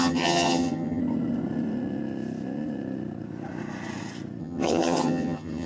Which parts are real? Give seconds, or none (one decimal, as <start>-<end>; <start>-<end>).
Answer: 1.0-4.4